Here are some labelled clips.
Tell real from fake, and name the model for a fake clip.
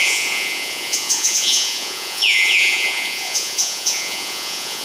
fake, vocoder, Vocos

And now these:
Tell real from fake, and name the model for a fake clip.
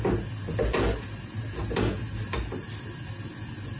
real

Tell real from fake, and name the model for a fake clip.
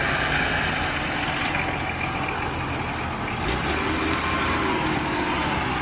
real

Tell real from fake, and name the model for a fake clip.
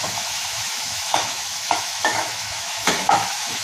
fake, autoencoder, DAC-VAE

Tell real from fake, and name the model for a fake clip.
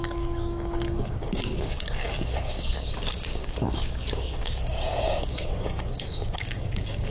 fake, codec, DAC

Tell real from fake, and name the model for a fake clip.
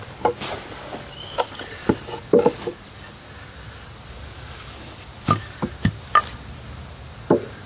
real